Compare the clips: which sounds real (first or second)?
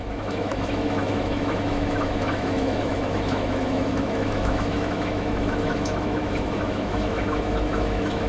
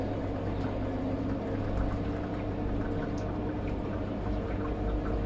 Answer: second